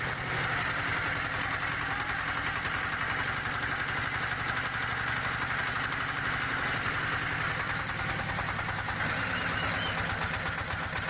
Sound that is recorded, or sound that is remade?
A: recorded